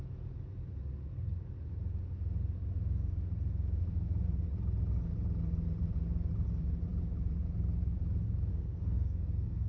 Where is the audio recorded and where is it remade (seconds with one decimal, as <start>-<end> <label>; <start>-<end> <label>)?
0.0-8.5 recorded; 8.5-9.7 remade